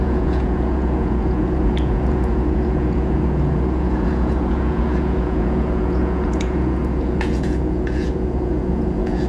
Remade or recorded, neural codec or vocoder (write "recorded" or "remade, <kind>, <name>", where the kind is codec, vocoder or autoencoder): remade, vocoder, Vocos